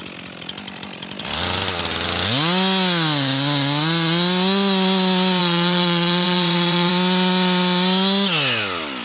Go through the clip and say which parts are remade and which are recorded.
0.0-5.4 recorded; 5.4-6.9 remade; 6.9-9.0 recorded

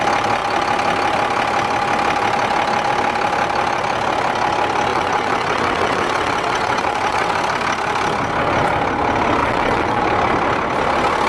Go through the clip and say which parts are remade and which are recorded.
0.0-4.9 recorded; 4.9-7.4 remade; 7.4-9.4 recorded; 9.4-10.0 remade; 10.0-11.3 recorded

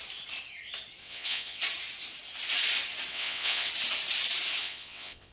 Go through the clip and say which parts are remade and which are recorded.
0.0-1.0 recorded; 1.0-1.6 remade; 1.6-3.1 recorded; 3.1-3.7 remade; 3.7-4.6 recorded; 4.6-5.3 remade